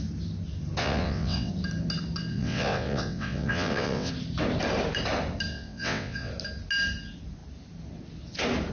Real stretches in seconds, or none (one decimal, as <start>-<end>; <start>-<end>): 0.0-0.8; 1.5-2.3; 4.1-5.5; 6.3-8.7